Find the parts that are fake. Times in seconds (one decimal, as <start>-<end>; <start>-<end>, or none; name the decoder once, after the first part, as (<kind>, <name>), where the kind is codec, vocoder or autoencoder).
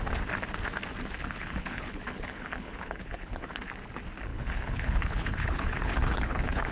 1.2-3.6 (codec, HILCodec); 4.3-6.7